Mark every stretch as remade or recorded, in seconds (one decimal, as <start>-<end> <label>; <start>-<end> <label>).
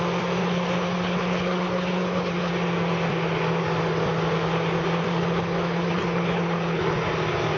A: 0.0-0.4 recorded; 0.4-2.5 remade; 2.5-5.1 recorded; 5.1-6.8 remade; 6.8-7.6 recorded